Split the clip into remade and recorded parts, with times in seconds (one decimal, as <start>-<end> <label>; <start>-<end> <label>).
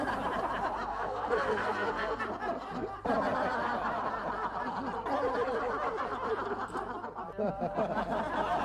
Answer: 0.0-0.9 recorded; 0.9-2.2 remade; 2.2-8.6 recorded